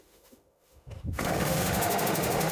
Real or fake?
fake